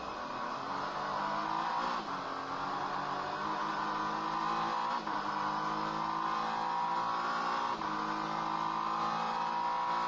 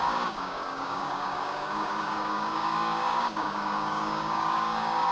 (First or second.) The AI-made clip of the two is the second